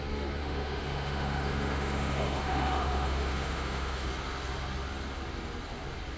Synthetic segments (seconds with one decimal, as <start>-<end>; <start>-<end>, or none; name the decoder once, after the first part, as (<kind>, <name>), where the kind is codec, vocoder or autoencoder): 0.4-4.1 (autoencoder, DAC-VAE)